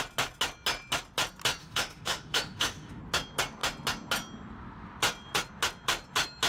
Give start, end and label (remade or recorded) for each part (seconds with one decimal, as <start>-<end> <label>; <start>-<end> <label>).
0.0-1.6 recorded; 1.6-3.0 remade; 3.0-6.5 recorded